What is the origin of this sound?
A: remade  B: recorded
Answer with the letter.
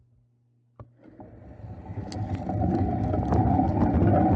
B